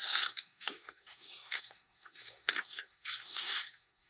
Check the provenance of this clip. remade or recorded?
remade